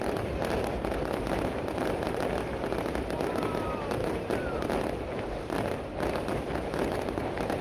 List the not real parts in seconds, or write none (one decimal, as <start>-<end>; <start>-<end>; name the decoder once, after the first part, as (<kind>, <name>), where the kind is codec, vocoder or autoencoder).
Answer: 0.0-7.6 (vocoder, BigVGAN v2)